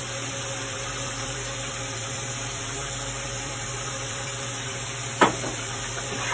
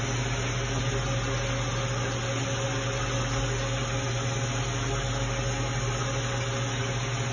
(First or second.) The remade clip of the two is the first